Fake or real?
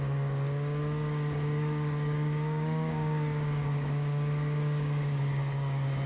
fake